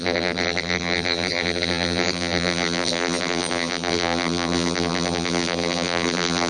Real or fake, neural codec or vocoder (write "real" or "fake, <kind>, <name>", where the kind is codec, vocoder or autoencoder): fake, vocoder, BigVGAN v2